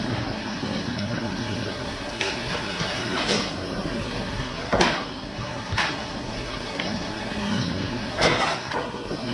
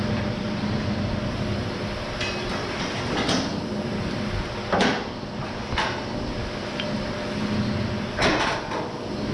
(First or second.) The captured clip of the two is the second